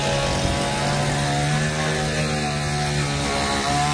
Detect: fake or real real